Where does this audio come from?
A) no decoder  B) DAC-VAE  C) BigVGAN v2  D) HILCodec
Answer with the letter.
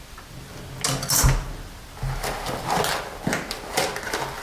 A